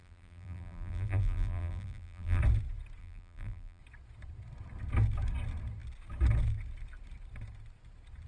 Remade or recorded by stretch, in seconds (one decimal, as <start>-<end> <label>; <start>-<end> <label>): 0.0-2.4 remade; 2.4-3.0 recorded; 3.0-3.8 remade; 3.8-8.3 recorded